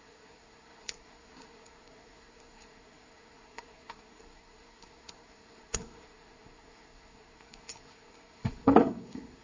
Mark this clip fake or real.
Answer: fake